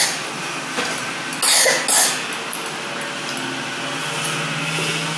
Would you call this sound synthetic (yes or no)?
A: no